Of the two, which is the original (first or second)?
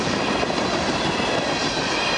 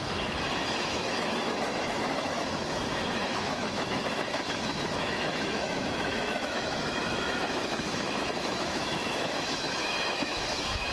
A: first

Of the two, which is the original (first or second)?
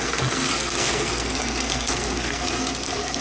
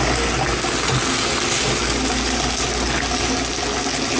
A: second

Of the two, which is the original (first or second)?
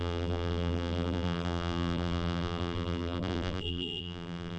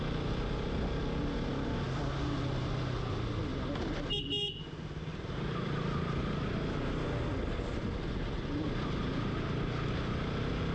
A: second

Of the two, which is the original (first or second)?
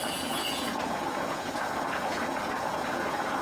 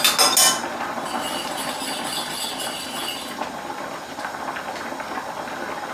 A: second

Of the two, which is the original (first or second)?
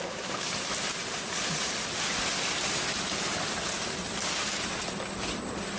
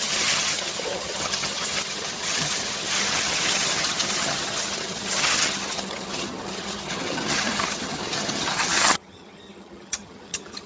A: first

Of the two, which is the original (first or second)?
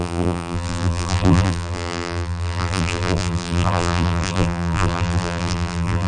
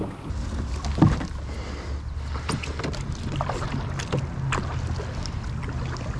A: second